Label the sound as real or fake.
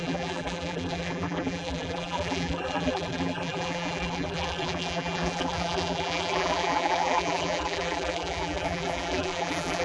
fake